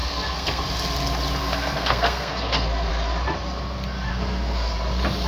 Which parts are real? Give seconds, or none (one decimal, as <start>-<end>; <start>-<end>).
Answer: 0.6-1.4; 2.9-4.1; 4.7-5.3